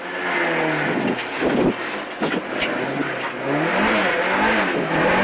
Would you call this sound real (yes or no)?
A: yes